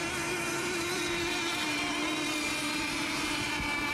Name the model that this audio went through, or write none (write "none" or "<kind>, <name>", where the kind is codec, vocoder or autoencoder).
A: vocoder, BigVGAN v2